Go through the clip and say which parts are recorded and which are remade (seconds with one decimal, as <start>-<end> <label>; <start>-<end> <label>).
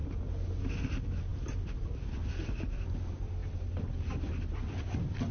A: 0.0-5.3 recorded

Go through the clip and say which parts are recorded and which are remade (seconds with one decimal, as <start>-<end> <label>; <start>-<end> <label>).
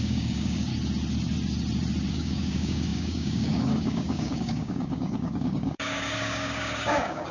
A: 0.0-0.7 remade; 0.7-2.1 recorded; 2.1-7.3 remade